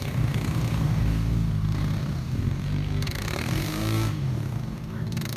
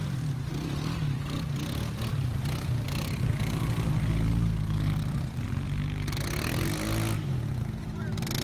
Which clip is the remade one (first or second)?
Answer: first